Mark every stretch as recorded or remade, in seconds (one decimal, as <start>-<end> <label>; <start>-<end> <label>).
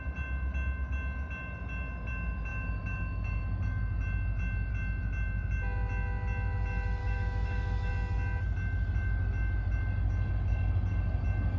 0.0-7.0 recorded; 7.0-7.9 remade; 7.9-11.6 recorded